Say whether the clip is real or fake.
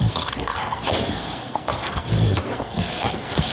fake